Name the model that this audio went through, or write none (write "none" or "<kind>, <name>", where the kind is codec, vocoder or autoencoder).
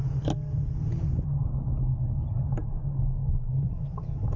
none